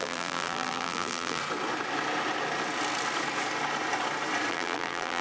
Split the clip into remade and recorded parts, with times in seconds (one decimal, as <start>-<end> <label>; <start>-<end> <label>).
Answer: 0.0-1.4 remade; 1.4-4.5 recorded; 4.5-5.2 remade